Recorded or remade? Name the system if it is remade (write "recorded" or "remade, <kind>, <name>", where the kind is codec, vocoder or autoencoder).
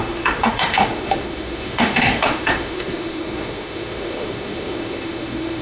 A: remade, autoencoder, DAC-VAE